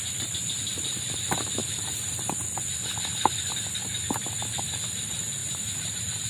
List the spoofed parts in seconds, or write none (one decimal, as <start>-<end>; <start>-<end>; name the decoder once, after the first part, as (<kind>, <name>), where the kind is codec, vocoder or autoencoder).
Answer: 5.4-6.3 (vocoder, BigVGAN v2)